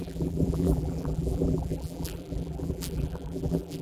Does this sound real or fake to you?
fake